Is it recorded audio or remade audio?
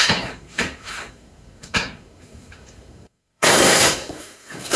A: remade